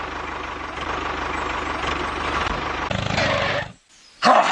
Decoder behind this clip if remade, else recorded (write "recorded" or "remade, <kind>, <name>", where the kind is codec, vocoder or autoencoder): recorded